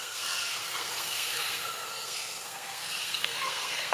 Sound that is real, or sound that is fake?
fake